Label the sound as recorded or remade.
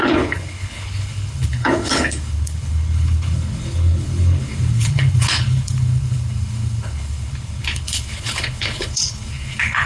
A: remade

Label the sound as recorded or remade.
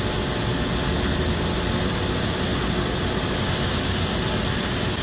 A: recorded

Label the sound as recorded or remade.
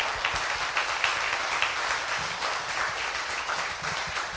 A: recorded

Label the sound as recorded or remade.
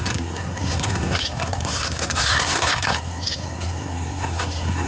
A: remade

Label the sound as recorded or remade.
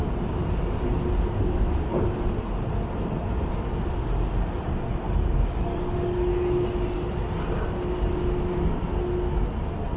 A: recorded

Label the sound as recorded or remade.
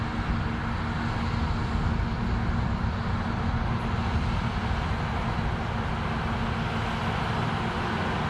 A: recorded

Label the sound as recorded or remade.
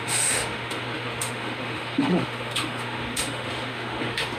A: remade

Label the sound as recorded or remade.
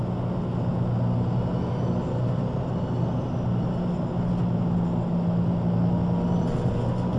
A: recorded